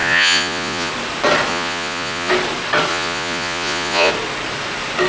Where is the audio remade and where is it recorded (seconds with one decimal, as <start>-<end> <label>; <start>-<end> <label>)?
0.0-0.9 remade; 0.9-1.5 recorded; 1.5-2.3 remade; 2.3-2.9 recorded; 2.9-4.1 remade; 4.1-5.1 recorded